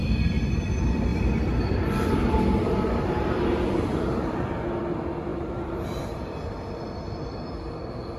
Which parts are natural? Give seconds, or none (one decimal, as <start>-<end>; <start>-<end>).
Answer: 0.0-1.1; 4.5-5.3; 6.2-8.2

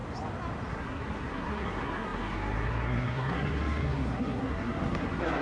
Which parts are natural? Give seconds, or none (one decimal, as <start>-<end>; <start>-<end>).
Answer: 0.0-0.7

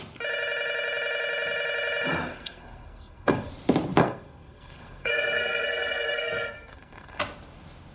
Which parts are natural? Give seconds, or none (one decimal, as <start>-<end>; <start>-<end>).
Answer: 0.0-2.3; 3.5-4.0; 7.2-7.9

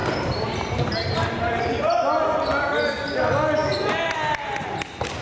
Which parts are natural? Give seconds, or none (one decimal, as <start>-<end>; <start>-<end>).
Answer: 2.0-5.2

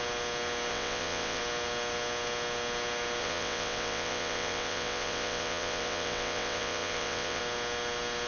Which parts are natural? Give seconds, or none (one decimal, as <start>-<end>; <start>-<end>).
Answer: 0.0-0.7; 1.4-3.2; 7.4-8.3

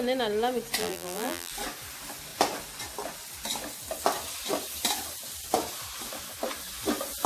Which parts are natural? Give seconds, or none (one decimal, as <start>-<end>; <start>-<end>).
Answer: 0.0-0.8; 1.5-7.3